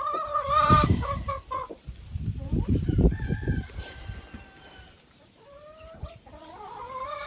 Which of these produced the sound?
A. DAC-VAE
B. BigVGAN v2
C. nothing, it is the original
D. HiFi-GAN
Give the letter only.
B